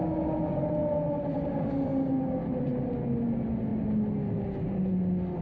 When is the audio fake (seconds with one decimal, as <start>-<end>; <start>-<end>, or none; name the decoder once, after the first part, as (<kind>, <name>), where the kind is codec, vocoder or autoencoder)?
none